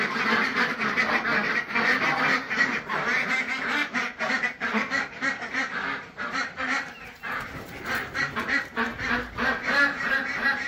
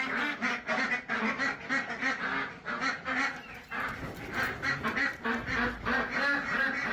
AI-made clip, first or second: first